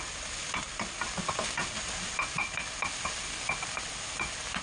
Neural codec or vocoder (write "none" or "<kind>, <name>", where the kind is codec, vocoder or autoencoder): none